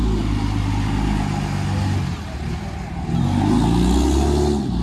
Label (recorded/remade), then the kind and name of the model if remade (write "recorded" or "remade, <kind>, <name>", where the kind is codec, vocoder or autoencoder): recorded